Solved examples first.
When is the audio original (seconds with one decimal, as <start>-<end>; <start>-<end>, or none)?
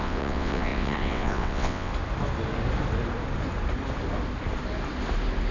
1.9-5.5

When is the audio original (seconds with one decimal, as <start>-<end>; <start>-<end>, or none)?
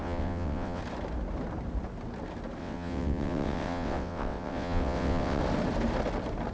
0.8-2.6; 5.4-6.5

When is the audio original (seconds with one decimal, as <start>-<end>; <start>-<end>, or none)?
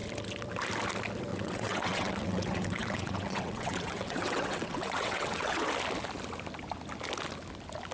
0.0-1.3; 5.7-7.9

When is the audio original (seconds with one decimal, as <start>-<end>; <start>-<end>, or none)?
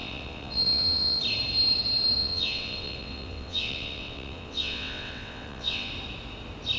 1.2-2.2; 5.9-6.8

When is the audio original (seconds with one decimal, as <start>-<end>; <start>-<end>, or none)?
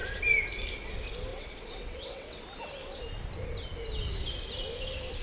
0.0-1.3; 2.4-5.2